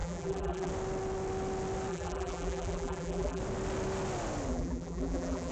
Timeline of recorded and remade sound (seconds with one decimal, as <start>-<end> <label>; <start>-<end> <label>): 0.0-0.7 remade; 0.7-1.9 recorded; 1.9-3.4 remade; 3.4-4.5 recorded; 4.5-5.5 remade